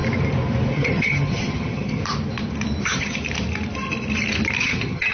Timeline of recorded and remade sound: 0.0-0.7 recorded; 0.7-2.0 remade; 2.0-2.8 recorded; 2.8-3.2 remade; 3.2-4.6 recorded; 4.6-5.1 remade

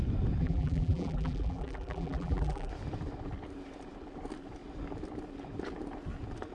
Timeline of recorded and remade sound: 0.0-0.4 recorded; 0.4-2.7 remade; 2.7-6.5 recorded

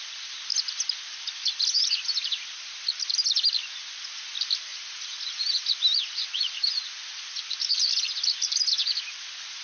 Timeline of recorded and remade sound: 0.0-9.6 recorded

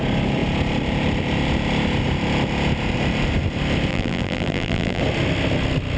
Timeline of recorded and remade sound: 0.0-3.9 recorded; 3.9-5.0 remade; 5.0-6.0 recorded

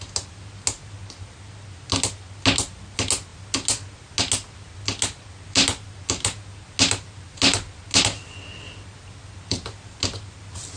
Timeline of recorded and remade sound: 0.0-10.8 recorded